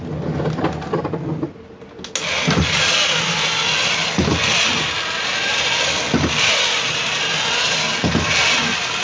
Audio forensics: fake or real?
real